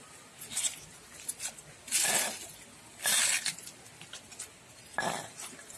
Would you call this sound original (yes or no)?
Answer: yes